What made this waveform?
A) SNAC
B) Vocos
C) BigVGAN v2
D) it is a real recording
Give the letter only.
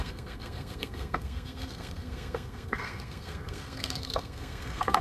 A